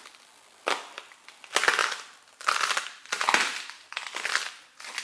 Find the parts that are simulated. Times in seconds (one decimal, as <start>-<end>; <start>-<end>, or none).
none